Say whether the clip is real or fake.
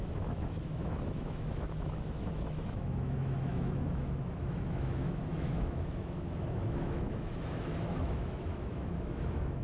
fake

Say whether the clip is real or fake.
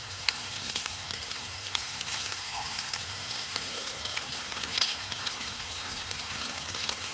fake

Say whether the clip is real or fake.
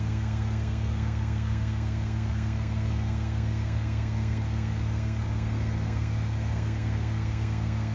fake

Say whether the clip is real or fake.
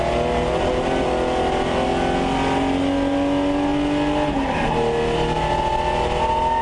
real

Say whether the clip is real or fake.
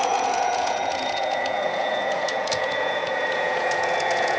fake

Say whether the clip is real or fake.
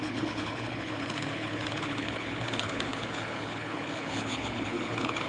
fake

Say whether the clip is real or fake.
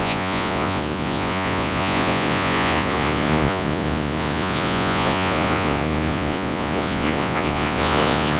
fake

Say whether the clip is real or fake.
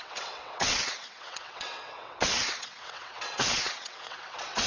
fake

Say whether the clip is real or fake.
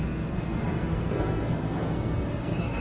fake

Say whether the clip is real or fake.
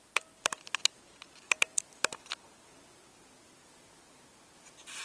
real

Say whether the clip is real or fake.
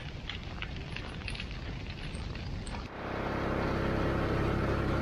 real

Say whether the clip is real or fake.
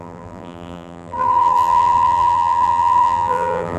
fake